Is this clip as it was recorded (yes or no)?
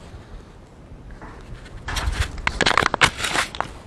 yes